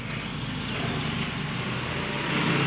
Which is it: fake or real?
real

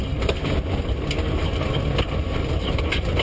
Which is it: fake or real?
real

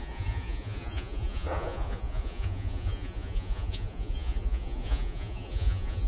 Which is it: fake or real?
fake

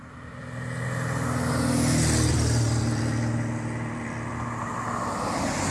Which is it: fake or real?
real